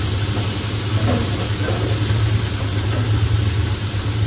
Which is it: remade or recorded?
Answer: recorded